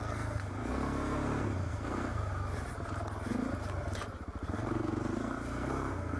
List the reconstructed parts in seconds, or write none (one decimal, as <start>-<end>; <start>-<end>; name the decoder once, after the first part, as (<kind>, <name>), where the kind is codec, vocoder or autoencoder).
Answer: 0.0-2.3 (codec, SNAC); 4.5-6.2